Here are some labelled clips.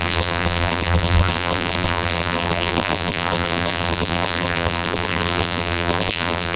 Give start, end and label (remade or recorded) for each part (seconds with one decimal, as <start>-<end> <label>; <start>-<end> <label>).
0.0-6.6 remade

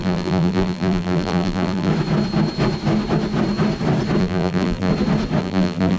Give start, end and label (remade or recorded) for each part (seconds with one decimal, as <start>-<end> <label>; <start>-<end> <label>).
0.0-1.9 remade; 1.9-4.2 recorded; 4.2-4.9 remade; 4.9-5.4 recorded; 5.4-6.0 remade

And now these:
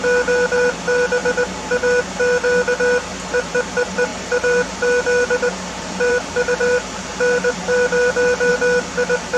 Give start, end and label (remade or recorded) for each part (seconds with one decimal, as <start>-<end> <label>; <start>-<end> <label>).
0.0-4.1 recorded; 4.1-8.5 remade; 8.5-9.4 recorded